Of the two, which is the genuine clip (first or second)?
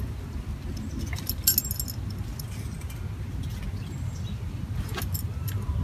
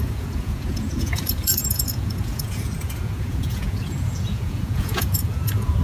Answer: first